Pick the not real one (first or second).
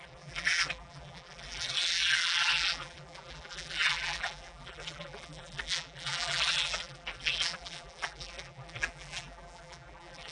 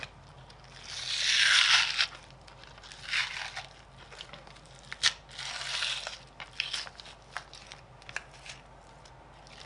first